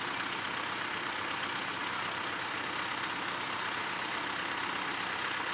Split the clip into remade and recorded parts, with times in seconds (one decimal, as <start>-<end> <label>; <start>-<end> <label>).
0.0-5.5 recorded